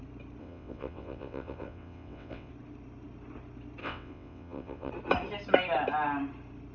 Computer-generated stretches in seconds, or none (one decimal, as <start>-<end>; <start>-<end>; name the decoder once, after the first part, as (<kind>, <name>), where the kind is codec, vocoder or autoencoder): 0.4-2.5 (vocoder, WaveNeXt); 3.8-4.9